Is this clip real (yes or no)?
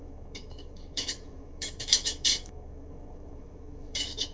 no